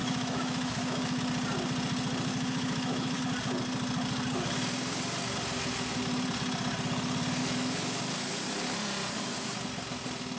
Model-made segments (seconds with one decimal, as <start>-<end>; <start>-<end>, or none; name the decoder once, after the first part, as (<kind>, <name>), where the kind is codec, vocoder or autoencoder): 0.0-1.2 (autoencoder, DAC-VAE); 2.3-3.2; 7.4-8.0